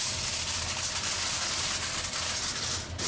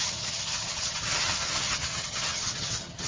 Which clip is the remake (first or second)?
second